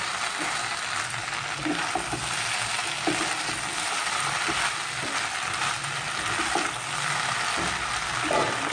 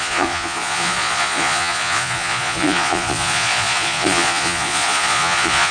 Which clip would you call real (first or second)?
first